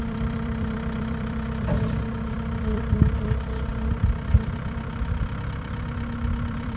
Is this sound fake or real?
fake